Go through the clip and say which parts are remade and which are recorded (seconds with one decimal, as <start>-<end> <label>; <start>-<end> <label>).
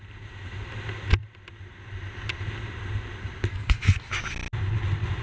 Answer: 0.0-3.5 recorded; 3.5-4.1 remade; 4.1-5.2 recorded